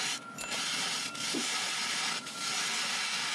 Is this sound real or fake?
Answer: real